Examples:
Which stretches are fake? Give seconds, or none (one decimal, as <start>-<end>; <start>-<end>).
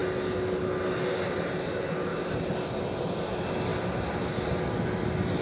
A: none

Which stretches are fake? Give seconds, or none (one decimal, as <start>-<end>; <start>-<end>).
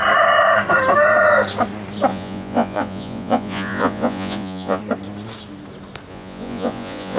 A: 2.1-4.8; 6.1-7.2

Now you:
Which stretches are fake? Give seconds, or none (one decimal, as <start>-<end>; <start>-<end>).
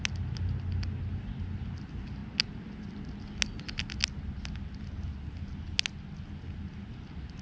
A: none